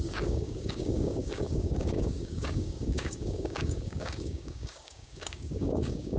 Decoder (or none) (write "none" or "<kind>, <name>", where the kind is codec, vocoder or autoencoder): codec, DAC